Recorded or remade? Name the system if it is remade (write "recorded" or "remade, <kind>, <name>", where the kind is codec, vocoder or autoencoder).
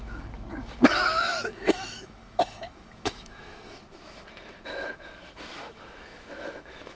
remade, autoencoder, DAC-VAE